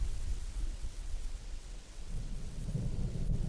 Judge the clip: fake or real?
fake